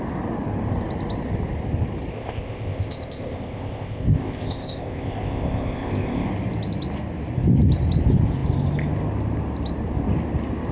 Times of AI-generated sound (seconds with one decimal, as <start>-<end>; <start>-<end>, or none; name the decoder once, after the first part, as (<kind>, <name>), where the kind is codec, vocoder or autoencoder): 2.1-6.3 (codec, ZipCodec)